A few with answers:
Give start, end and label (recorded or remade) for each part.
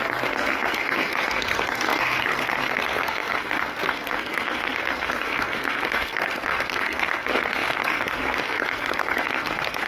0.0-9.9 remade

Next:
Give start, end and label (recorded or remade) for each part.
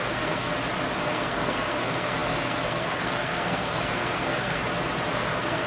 0.0-0.5 remade; 0.5-1.1 recorded; 1.1-4.6 remade; 4.6-5.1 recorded; 5.1-5.7 remade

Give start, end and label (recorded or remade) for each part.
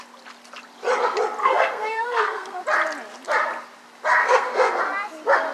0.0-1.4 recorded; 1.4-2.6 remade; 2.6-4.2 recorded; 4.2-4.8 remade; 4.8-5.5 recorded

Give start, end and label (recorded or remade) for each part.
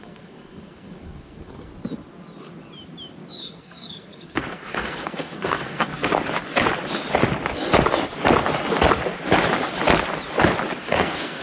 0.0-1.7 remade; 1.7-3.3 recorded; 3.3-6.1 remade; 6.1-10.8 recorded; 10.8-11.4 remade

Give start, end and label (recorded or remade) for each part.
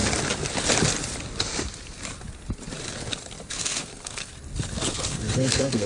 0.0-3.5 recorded; 3.5-4.3 remade; 4.3-4.9 recorded; 4.9-5.9 remade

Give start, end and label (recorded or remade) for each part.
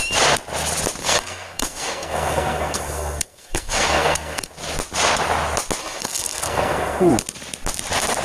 0.0-1.0 recorded; 1.0-4.5 remade; 4.5-5.8 recorded; 5.8-7.1 remade; 7.1-8.2 recorded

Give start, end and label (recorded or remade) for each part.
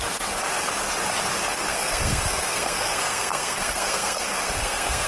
0.0-1.7 recorded; 1.7-5.1 remade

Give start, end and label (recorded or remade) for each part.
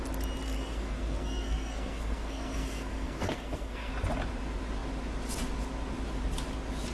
0.0-0.4 recorded; 0.4-3.9 remade; 3.9-6.9 recorded